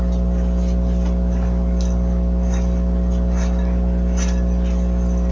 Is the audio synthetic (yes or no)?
no